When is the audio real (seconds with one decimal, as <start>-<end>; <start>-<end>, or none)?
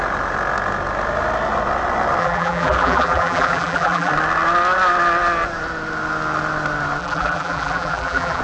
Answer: 0.0-2.2; 4.1-7.0